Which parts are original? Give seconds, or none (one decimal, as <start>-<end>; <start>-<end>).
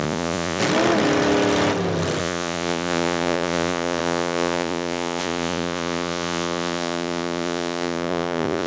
0.6-2.2